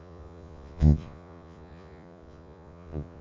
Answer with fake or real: fake